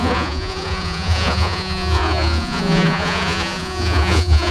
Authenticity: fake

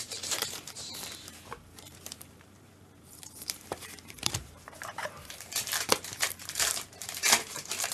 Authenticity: fake